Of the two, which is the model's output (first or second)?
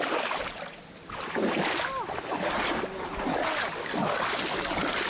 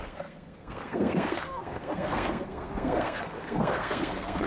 second